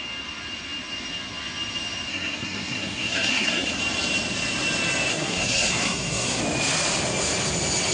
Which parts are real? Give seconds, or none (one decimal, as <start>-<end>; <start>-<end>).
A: 0.0-2.1; 3.8-5.1; 6.4-7.9